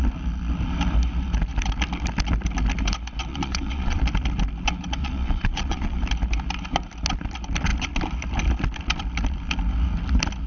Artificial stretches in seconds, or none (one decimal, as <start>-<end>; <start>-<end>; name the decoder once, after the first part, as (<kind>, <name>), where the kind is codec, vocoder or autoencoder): 3.3-4.0 (vocoder, Vocos); 5.0-6.0